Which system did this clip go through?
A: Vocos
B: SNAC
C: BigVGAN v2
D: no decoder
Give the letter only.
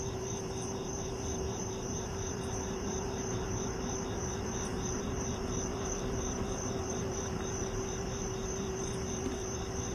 C